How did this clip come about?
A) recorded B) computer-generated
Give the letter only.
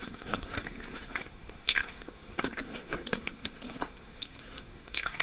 B